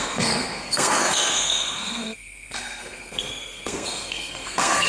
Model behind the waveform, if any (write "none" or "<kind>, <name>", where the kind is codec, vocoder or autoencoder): codec, SNAC